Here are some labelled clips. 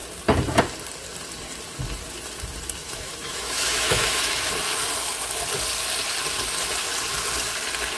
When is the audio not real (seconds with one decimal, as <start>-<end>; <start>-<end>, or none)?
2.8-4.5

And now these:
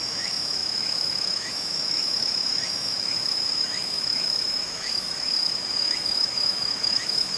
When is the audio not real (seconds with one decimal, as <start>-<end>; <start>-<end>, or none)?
0.0-7.4

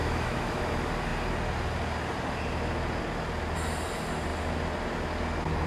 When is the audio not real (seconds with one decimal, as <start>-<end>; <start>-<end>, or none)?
0.0-0.6

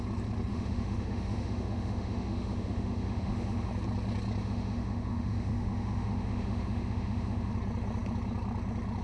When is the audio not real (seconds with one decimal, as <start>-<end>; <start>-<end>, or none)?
0.5-3.7; 4.4-7.5